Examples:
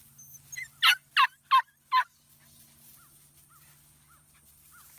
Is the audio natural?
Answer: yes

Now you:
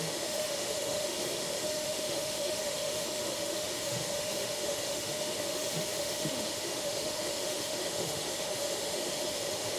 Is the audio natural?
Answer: no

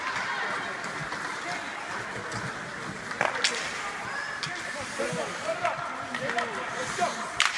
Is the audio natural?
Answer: yes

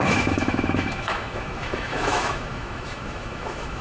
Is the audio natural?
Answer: no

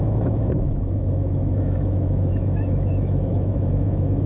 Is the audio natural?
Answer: no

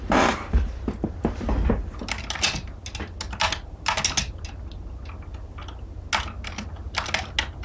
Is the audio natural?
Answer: yes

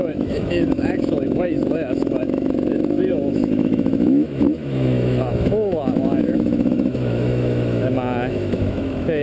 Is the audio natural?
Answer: no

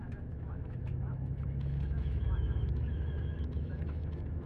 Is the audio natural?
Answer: no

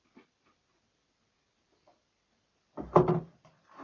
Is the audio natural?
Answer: yes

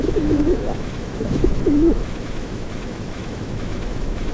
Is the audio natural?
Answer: no